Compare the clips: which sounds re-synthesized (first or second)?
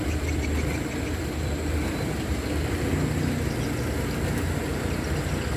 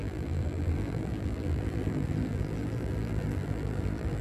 second